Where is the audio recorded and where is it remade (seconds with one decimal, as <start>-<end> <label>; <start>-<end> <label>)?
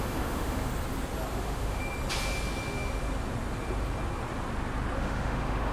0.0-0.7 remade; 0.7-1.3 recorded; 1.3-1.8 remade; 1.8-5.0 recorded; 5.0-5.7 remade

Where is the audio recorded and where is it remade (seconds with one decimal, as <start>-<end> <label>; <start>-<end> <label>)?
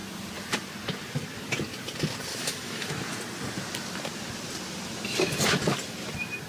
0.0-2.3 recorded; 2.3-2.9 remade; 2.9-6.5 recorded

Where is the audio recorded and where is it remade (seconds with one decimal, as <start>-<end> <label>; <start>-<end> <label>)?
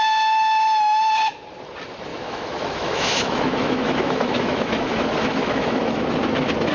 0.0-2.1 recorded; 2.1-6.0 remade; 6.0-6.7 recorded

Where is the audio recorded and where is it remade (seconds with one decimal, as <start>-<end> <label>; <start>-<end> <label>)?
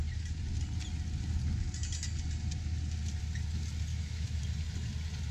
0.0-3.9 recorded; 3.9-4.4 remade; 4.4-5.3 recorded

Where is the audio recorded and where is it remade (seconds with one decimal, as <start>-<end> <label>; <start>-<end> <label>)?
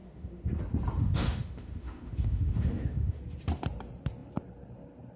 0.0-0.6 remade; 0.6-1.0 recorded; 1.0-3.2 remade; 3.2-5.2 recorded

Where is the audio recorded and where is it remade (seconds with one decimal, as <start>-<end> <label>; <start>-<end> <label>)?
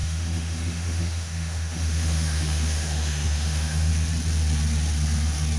0.0-3.9 remade; 3.9-5.6 recorded